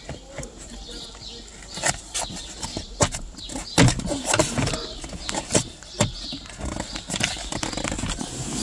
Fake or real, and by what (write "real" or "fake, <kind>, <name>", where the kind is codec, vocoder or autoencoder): real